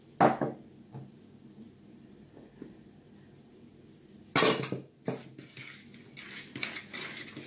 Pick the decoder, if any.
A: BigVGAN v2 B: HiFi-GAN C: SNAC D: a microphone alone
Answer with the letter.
D